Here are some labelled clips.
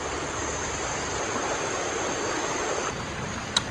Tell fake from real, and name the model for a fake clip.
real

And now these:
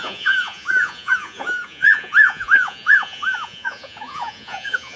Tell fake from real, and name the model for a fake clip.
fake, vocoder, Vocos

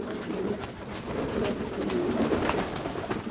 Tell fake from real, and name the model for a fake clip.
real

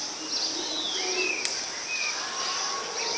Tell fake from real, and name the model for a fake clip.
real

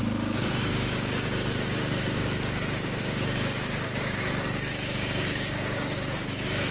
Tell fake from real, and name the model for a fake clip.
fake, codec, DAC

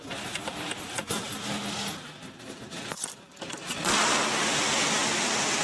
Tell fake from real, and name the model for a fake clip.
real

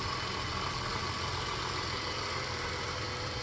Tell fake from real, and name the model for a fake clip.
real